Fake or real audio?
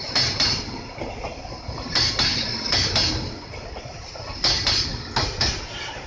real